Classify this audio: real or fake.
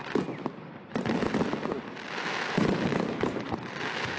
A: real